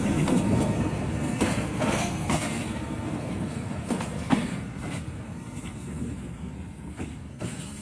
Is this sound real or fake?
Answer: fake